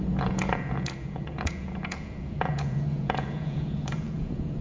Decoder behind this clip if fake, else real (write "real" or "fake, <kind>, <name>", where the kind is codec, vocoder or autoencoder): fake, vocoder, Vocos